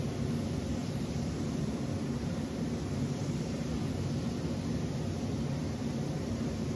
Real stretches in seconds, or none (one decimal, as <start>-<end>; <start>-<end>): 0.0-0.8; 1.8-6.8